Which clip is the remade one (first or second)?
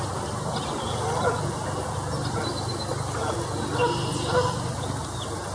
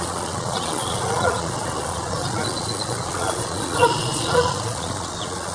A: second